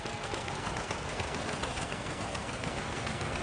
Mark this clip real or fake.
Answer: fake